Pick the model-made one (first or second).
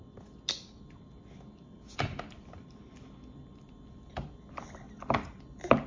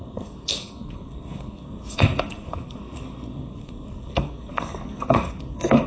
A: second